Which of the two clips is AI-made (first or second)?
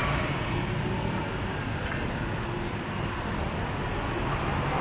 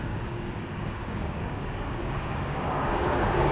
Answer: second